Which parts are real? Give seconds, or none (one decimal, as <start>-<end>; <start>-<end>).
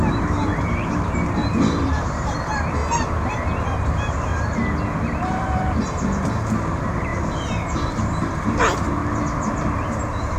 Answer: 2.8-3.6; 4.3-5.2; 9.0-9.5